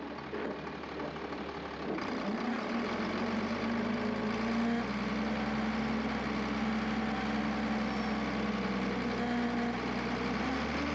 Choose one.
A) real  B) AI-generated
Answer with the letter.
A